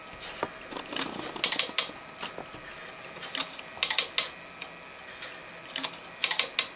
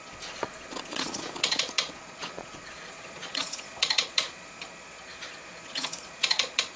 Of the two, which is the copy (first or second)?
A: second